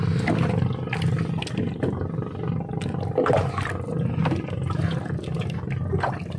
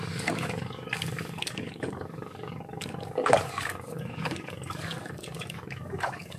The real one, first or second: first